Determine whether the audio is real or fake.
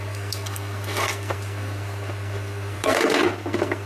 fake